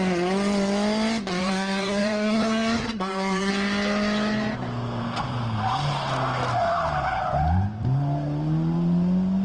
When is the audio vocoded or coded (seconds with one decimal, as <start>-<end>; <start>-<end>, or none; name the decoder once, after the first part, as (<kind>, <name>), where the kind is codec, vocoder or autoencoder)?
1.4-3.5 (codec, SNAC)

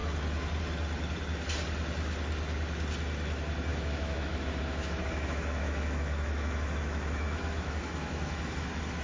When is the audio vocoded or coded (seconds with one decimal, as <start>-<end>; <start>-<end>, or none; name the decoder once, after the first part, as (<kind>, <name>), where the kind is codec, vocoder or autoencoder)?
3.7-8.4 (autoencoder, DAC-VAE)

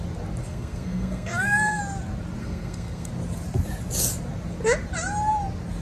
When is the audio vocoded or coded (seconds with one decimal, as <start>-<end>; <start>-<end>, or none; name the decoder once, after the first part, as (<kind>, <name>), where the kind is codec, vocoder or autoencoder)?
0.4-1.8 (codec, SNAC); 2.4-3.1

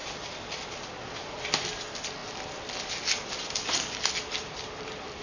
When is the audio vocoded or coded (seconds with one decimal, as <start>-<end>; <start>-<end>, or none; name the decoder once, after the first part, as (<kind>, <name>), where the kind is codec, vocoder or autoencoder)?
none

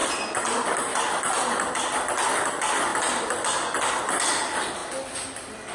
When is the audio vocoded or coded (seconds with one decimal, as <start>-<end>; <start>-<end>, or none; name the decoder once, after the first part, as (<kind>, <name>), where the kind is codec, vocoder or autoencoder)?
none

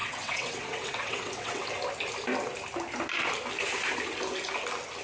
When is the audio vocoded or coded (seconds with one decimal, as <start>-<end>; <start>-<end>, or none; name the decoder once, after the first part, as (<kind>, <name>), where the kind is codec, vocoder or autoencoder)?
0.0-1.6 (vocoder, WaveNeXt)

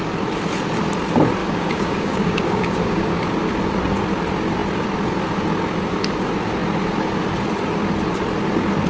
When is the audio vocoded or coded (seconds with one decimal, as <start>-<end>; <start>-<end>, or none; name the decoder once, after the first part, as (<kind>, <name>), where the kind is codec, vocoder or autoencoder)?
1.4-3.2 (codec, DAC)

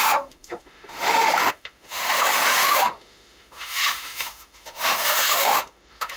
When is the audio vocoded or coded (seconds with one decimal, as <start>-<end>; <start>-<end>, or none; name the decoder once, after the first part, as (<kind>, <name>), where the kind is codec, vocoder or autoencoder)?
0.0-6.2 (autoencoder, DAC-VAE)